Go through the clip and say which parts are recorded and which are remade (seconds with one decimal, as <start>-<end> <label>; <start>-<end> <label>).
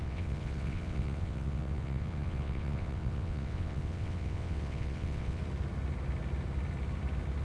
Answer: 0.0-5.4 remade; 5.4-7.4 recorded